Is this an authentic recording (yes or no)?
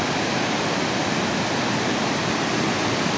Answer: yes